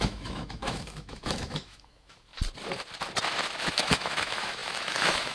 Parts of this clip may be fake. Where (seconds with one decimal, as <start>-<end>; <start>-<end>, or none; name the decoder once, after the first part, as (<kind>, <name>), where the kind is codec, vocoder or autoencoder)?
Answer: 0.0-2.3 (autoencoder, DAC-VAE); 3.7-5.3